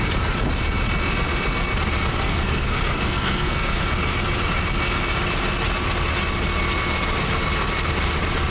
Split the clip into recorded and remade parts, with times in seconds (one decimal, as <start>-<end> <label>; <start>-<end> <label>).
0.0-2.3 recorded; 2.3-3.8 remade; 3.8-8.5 recorded